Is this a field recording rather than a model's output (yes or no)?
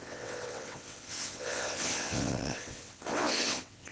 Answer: no